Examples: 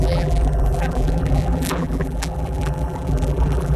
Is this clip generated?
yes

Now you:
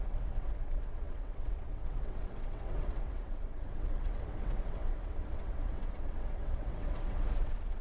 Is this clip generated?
yes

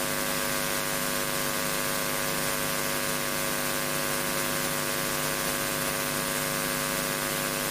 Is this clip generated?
no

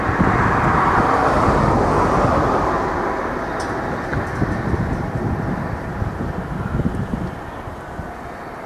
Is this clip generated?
no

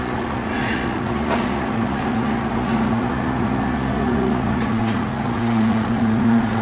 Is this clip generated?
yes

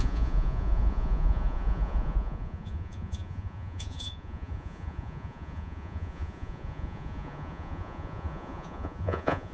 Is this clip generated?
yes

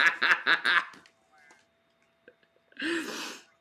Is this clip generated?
no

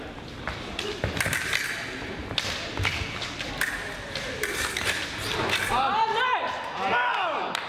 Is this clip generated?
no